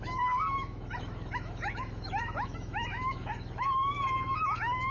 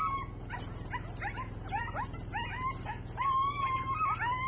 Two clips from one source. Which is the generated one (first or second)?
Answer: first